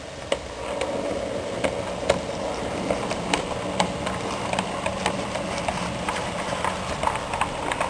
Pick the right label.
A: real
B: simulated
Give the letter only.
A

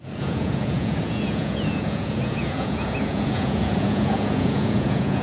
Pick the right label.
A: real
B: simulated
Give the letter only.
B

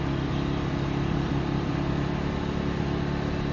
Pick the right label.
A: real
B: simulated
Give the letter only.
A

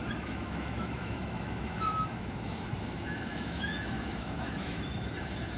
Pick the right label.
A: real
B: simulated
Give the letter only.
B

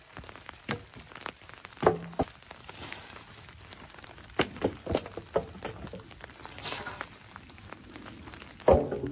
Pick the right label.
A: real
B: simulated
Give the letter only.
A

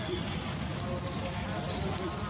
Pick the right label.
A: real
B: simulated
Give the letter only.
A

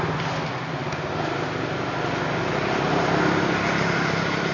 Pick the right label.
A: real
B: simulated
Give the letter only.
A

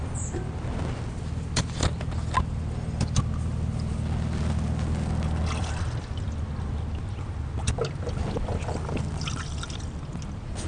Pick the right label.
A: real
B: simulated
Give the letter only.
A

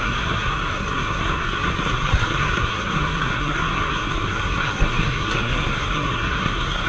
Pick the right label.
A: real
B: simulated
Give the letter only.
B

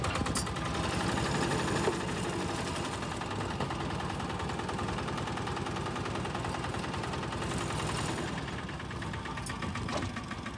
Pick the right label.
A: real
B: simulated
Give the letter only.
A